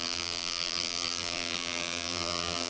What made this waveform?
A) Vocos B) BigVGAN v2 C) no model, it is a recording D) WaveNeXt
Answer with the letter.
B